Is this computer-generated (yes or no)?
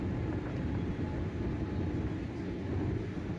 no